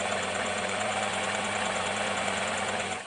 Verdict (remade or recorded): remade